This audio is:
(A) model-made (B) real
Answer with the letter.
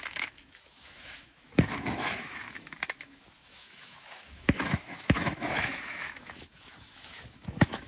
A